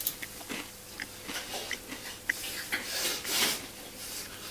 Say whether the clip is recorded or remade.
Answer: recorded